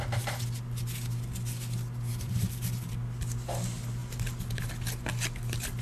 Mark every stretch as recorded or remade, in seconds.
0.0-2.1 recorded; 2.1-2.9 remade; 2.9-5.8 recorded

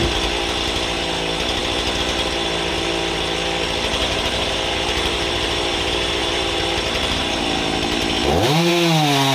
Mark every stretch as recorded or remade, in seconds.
0.0-3.9 recorded; 3.9-8.7 remade; 8.7-9.3 recorded

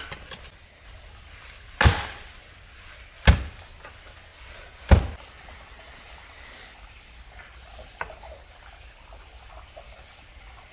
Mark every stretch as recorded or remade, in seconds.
0.0-10.7 recorded